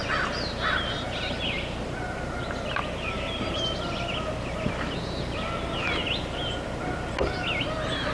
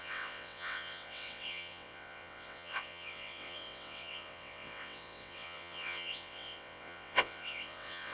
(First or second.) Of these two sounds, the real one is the first